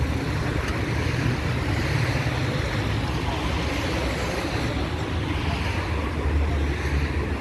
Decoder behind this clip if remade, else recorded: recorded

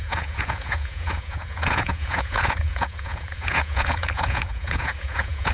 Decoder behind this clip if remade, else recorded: remade, vocoder, Vocos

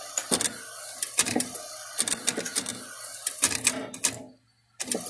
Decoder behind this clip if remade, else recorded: recorded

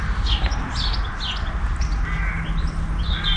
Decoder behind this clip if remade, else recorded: recorded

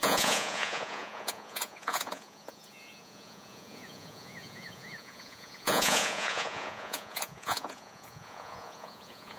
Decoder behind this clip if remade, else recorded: remade, vocoder, Vocos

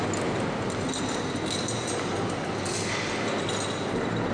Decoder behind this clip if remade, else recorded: recorded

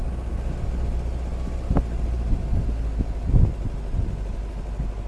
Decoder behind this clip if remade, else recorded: recorded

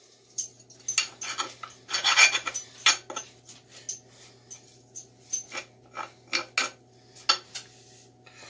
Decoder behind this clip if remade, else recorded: recorded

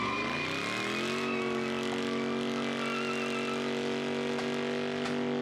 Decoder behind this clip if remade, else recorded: recorded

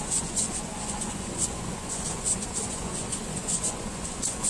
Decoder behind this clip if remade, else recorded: remade, vocoder, Vocos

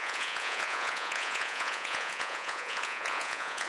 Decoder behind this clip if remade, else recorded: remade, vocoder, Vocos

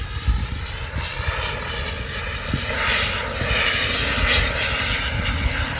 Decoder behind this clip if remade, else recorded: recorded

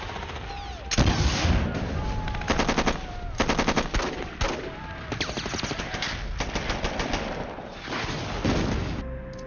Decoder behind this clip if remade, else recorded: recorded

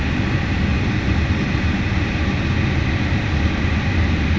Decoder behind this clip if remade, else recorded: recorded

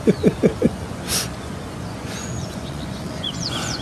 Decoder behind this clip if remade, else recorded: remade, vocoder, Vocos